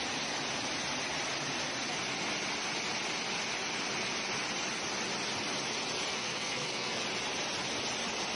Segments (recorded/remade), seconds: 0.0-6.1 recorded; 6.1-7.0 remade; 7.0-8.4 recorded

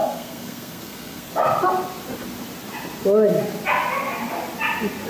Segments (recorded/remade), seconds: 0.0-1.3 remade; 1.3-5.1 recorded